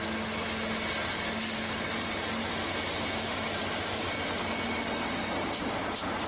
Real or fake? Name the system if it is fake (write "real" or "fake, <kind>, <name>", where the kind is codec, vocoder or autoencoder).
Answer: real